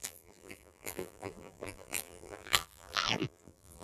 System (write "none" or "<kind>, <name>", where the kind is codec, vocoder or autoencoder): vocoder, BigVGAN v2